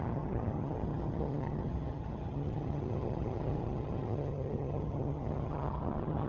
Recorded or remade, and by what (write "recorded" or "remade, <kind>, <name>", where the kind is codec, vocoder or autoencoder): remade, vocoder, HiFi-GAN